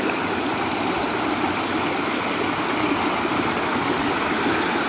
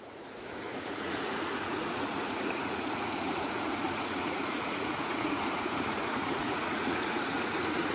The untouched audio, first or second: first